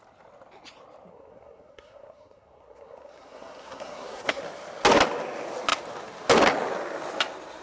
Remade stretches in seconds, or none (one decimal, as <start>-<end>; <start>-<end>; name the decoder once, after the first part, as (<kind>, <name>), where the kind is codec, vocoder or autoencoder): 1.1-4.4 (codec, SNAC)